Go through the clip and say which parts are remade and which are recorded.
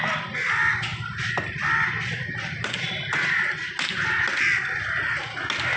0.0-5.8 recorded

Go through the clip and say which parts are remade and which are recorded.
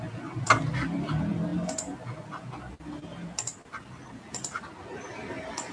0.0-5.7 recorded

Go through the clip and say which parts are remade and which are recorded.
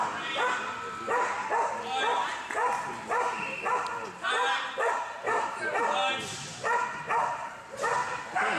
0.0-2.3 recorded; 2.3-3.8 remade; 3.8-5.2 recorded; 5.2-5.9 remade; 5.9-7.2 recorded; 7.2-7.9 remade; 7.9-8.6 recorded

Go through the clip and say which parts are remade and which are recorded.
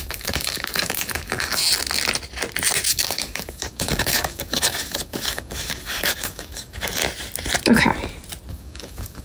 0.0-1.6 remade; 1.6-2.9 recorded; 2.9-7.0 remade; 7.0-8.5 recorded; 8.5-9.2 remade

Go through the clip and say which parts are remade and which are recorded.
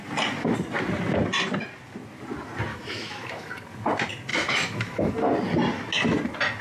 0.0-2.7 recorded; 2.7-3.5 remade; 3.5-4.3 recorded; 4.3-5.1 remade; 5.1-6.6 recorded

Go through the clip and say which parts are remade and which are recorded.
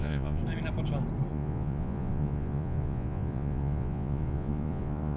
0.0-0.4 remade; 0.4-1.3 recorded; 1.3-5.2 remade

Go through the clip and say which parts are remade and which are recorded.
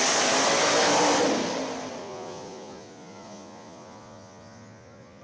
0.0-2.0 recorded; 2.0-5.2 remade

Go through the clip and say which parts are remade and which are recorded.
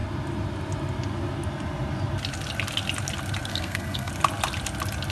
0.0-3.5 recorded; 3.5-4.1 remade; 4.1-5.1 recorded